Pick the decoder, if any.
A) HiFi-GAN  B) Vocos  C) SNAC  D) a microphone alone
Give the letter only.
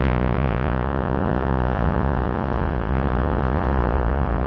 B